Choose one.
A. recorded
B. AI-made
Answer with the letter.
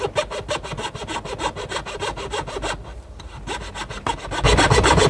A